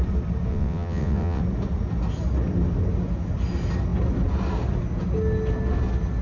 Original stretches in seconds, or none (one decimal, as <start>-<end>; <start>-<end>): 0.0-0.5; 1.4-6.2